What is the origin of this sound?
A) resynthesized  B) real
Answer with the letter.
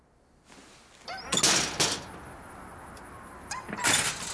B